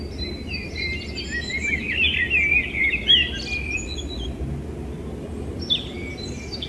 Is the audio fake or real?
real